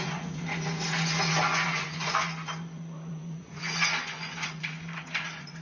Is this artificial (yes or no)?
yes